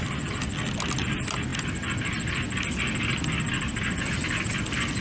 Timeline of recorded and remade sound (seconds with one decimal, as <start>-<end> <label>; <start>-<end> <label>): 0.0-5.0 recorded